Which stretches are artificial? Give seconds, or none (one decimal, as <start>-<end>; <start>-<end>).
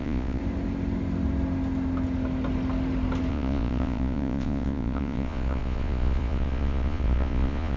0.0-0.4; 3.3-7.8